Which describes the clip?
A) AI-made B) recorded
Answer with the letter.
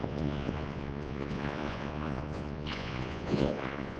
A